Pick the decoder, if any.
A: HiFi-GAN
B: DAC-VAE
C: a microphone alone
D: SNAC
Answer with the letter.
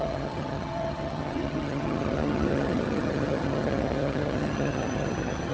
A